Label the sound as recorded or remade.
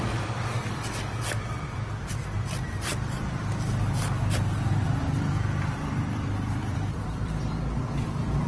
remade